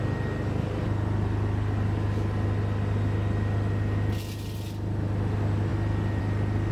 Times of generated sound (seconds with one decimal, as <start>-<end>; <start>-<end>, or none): none